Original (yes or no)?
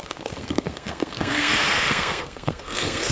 no